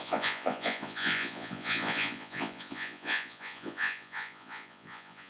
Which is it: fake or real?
fake